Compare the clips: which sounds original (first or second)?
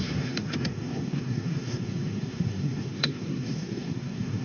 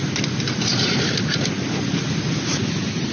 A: second